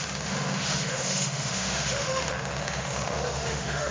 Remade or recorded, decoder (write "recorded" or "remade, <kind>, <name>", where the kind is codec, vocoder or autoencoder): remade, autoencoder, DAC-VAE